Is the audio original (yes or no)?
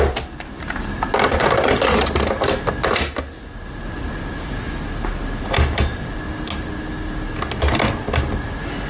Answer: yes